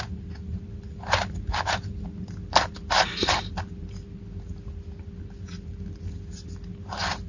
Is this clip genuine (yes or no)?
yes